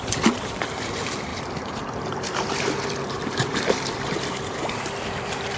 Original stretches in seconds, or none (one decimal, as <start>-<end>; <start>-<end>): none